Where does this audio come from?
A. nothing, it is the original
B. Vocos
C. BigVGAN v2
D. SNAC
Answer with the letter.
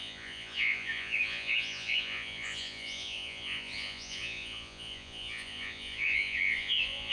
B